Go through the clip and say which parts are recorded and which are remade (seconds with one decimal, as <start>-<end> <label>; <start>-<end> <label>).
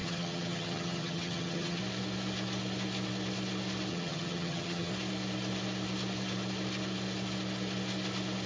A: 0.0-1.8 remade; 1.8-3.9 recorded; 3.9-4.9 remade; 4.9-8.5 recorded